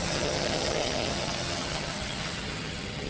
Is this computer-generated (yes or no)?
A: yes